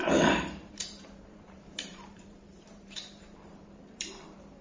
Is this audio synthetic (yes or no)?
yes